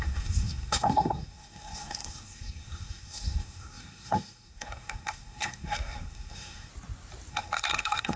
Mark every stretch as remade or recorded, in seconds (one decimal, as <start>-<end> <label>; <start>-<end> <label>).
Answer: 0.0-6.7 remade; 6.7-7.3 recorded; 7.3-8.2 remade